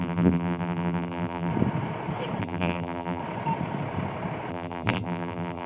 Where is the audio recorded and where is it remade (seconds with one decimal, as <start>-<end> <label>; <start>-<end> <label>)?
0.0-1.5 remade; 1.5-2.4 recorded; 2.4-3.2 remade; 3.2-4.5 recorded; 4.5-5.7 remade